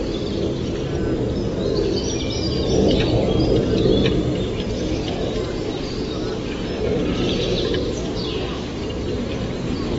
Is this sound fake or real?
real